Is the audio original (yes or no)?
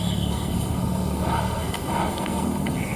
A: no